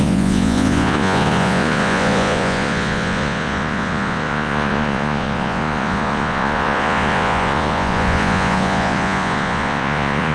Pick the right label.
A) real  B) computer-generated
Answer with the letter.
B